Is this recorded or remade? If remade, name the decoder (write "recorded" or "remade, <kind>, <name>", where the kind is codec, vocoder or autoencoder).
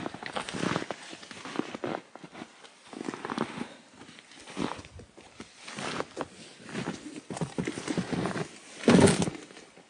recorded